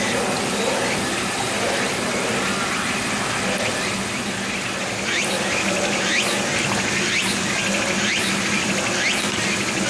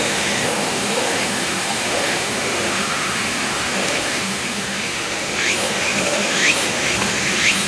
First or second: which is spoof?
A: second